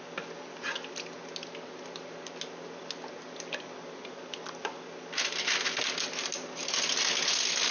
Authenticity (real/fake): real